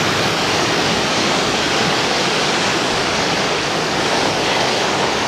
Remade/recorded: remade